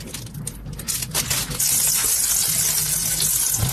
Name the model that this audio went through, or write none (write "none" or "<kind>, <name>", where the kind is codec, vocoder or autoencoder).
none